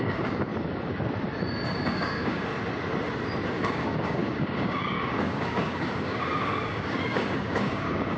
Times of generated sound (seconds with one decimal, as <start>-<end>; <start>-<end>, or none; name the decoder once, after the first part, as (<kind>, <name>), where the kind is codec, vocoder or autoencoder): 0.0-0.5 (codec, DAC); 1.8-2.5; 3.6-8.2